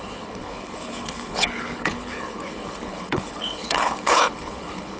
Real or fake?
fake